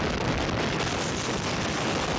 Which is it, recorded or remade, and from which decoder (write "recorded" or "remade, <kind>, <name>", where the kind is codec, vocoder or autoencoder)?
recorded